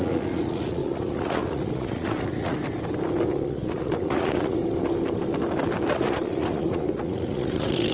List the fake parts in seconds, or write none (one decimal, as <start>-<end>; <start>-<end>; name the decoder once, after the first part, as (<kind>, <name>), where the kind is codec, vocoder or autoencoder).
0.0-2.6 (vocoder, Vocos); 3.3-4.6; 5.9-7.9